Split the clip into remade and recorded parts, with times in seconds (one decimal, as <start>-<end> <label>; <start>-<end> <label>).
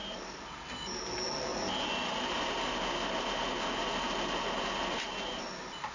0.0-5.9 recorded